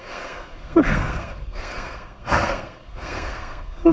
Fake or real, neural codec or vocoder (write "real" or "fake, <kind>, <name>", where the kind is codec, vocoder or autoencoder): fake, codec, SNAC